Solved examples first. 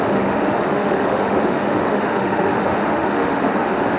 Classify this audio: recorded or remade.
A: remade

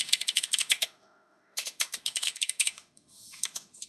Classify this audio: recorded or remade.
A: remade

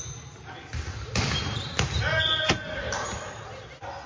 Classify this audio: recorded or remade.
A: recorded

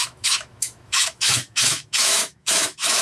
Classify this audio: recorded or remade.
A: remade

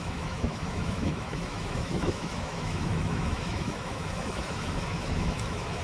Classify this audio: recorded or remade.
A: remade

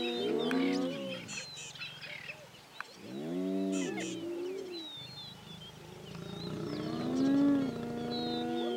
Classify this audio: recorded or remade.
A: recorded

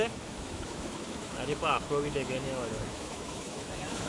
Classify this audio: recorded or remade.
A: remade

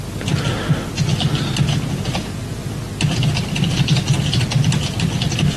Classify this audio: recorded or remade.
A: recorded